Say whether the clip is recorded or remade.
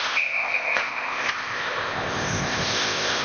remade